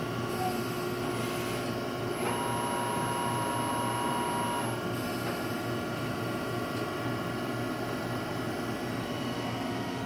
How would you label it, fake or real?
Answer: real